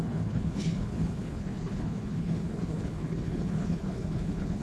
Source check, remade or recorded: remade